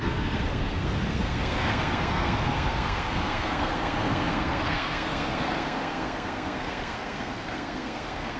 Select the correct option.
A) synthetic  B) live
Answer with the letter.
A